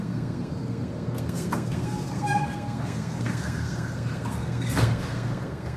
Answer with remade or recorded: remade